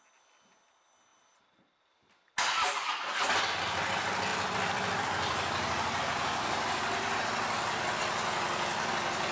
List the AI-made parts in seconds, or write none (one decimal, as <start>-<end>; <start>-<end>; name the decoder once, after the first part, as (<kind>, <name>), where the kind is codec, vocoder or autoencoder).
1.1-3.4 (vocoder, BigVGAN v2); 4.3-8.0